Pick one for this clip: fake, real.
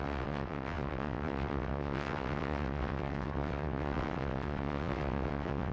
fake